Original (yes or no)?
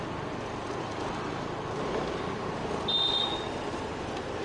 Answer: yes